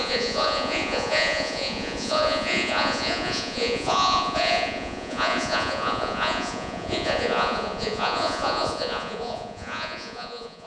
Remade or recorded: remade